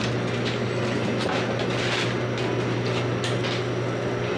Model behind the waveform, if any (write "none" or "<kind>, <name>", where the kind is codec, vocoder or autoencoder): none